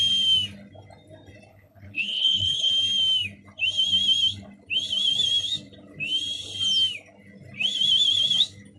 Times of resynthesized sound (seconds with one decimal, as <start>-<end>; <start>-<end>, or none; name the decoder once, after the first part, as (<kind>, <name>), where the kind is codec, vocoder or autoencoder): 1.5-2.7 (codec, HILCodec)